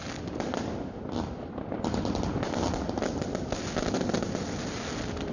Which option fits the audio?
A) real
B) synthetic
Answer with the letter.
A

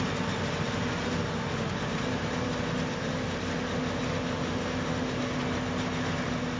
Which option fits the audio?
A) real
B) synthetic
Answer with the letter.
A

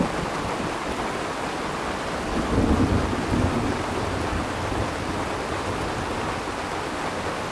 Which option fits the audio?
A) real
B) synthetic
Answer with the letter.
A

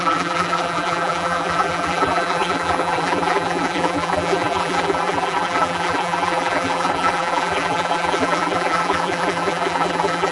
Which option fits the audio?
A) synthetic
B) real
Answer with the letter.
A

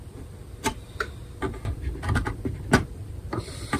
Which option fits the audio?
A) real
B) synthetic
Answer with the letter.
B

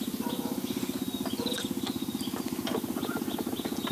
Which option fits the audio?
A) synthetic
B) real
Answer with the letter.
B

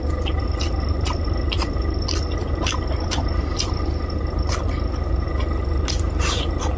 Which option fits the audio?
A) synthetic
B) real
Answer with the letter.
B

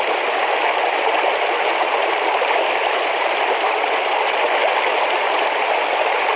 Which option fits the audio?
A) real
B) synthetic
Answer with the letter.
A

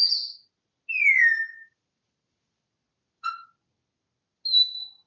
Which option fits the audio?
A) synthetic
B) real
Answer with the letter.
B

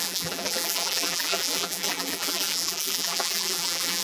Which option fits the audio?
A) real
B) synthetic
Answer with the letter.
B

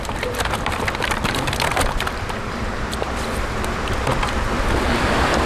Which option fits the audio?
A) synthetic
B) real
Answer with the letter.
A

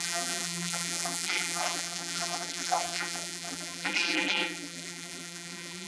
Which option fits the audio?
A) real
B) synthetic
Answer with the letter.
B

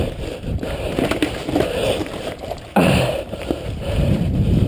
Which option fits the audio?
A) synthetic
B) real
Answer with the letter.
A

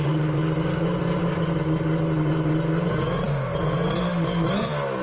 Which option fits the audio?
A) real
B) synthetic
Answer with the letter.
A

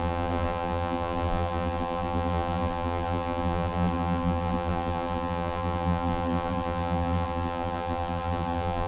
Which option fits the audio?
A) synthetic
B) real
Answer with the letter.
A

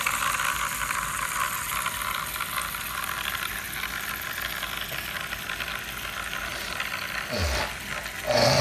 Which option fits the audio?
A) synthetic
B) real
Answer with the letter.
B